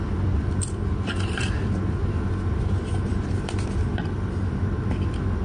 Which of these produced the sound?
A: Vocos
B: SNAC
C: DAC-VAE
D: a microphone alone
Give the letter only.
D